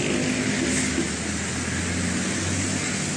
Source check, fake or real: real